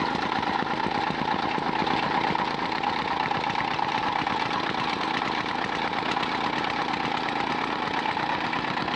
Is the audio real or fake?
real